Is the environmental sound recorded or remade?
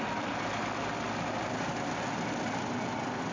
recorded